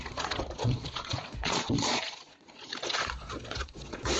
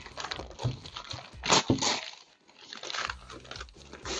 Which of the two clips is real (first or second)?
second